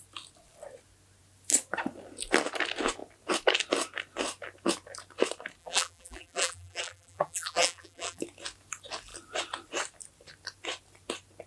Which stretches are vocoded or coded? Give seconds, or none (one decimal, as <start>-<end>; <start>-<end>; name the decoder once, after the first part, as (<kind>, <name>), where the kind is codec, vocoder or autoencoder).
5.6-8.2 (vocoder, BigVGAN v2)